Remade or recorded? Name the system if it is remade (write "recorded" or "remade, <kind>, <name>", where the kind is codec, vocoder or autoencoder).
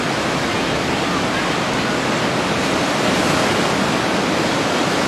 recorded